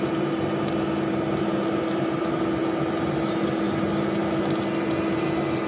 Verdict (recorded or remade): recorded